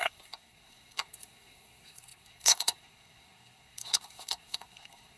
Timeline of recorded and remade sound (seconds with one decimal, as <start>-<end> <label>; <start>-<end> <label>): 0.0-5.2 remade